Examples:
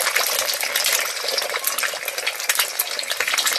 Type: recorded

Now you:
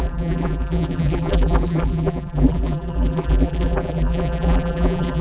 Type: remade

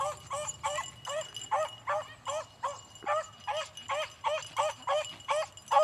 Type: recorded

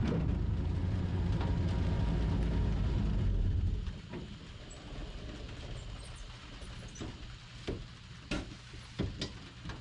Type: recorded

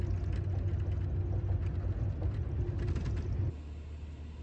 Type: recorded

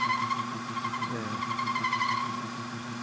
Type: recorded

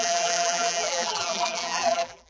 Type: remade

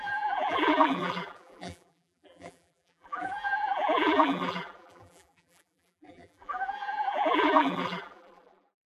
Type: remade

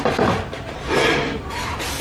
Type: remade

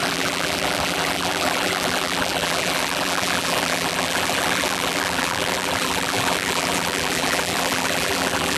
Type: remade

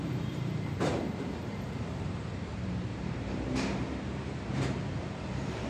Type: remade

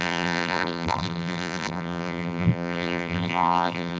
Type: remade